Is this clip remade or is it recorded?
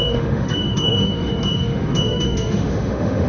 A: remade